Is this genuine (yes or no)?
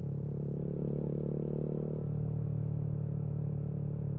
no